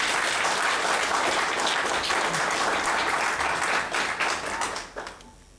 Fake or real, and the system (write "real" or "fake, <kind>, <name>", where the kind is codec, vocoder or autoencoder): real